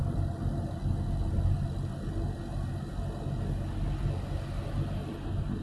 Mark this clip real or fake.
real